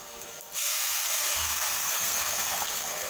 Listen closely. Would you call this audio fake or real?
fake